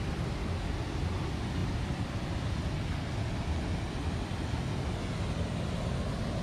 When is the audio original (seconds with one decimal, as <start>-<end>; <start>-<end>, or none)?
0.0-6.4